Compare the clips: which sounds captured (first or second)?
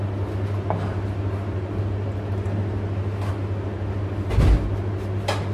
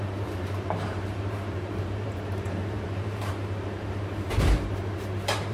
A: first